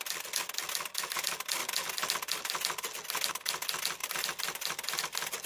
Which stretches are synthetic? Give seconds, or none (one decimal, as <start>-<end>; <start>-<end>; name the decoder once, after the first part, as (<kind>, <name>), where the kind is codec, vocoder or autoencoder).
4.0-5.0 (vocoder, BigVGAN v2)